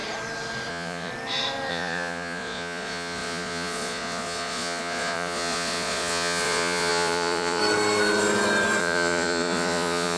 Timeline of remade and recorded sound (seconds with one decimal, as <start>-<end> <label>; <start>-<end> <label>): 0.0-0.7 recorded; 0.7-1.1 remade; 1.1-1.7 recorded; 1.7-7.6 remade; 7.6-8.8 recorded; 8.8-10.2 remade